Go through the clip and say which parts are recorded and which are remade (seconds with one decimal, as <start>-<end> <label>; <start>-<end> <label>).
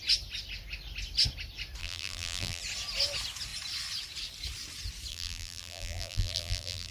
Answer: 0.0-1.8 recorded; 1.8-2.6 remade; 2.6-5.1 recorded; 5.1-6.9 remade